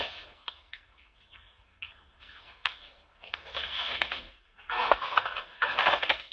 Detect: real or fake fake